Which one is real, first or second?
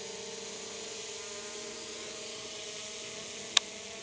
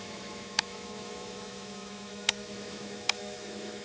first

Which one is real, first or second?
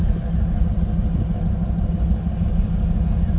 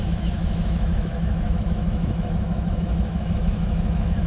first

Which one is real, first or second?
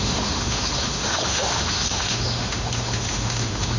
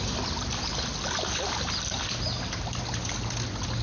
second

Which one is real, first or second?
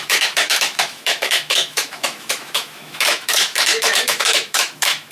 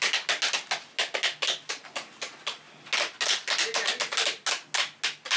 second